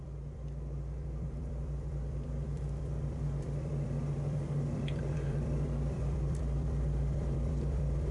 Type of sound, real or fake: fake